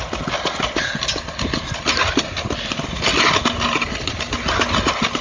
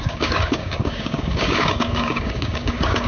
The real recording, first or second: first